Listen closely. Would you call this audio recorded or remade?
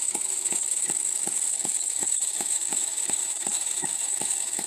remade